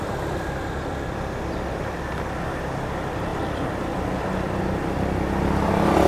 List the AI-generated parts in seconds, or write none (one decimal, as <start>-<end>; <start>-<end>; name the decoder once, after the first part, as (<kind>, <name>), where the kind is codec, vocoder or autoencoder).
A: none